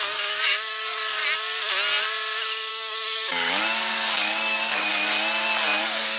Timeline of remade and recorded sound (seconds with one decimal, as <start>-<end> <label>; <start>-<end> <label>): 0.0-1.2 remade; 1.2-2.7 recorded; 2.7-4.9 remade; 4.9-5.8 recorded; 5.8-6.2 remade

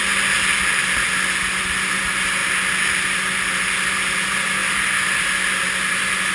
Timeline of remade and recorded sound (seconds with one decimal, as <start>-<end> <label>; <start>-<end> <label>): 0.0-6.3 recorded

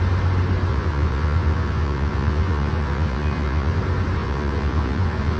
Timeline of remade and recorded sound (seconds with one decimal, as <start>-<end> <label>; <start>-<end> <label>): 0.0-0.7 recorded; 0.7-3.8 remade; 3.8-4.2 recorded; 4.2-5.4 remade

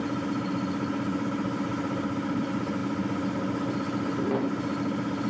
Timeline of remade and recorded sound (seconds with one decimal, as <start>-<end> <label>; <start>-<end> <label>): 0.0-5.3 recorded

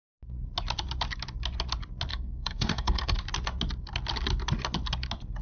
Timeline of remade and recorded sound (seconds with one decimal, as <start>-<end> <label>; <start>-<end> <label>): 0.0-2.1 recorded; 2.1-3.2 remade; 3.2-5.4 recorded

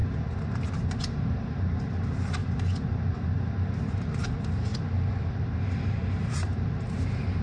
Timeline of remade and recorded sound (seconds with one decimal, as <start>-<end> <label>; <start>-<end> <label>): 0.0-1.0 recorded; 1.0-2.4 remade; 2.4-3.8 recorded; 3.8-4.7 remade; 4.7-5.3 recorded; 5.3-7.4 remade

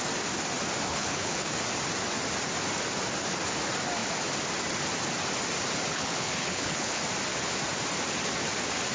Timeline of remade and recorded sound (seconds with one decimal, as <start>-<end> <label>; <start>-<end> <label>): 0.0-0.9 recorded; 0.9-1.5 remade; 1.5-5.9 recorded; 5.9-7.0 remade; 7.0-8.9 recorded

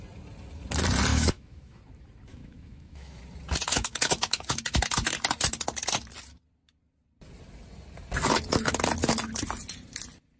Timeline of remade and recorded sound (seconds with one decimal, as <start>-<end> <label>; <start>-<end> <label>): 0.0-1.1 recorded; 1.1-1.8 remade; 1.8-2.3 recorded; 2.3-3.2 remade; 3.2-3.7 recorded; 3.7-4.6 remade; 4.6-10.4 recorded